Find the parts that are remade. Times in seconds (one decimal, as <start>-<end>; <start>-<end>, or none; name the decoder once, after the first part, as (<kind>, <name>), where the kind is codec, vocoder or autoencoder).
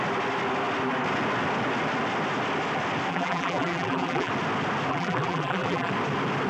3.1-4.3 (vocoder, BigVGAN v2); 4.9-5.9